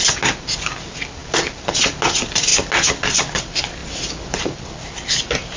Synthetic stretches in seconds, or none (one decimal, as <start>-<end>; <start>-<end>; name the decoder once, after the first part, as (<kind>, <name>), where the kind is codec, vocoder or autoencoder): none